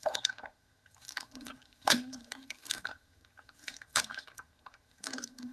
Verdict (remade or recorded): remade